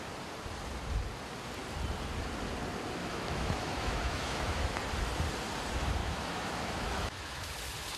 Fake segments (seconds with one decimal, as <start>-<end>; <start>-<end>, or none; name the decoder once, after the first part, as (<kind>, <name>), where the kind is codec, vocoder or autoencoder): 3.0-4.8 (autoencoder, DAC-VAE); 6.0-7.5